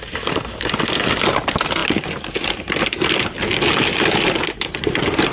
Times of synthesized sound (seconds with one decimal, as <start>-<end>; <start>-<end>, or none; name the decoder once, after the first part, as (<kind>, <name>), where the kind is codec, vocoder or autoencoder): none